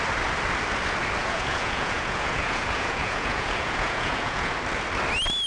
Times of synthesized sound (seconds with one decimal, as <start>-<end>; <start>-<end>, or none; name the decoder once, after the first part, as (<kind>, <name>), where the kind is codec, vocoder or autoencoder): 1.2-4.5 (vocoder, Vocos)